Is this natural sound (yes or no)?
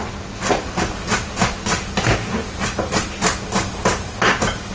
yes